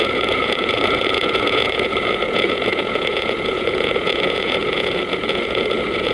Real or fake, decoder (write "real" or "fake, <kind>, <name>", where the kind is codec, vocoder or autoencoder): fake, vocoder, Vocos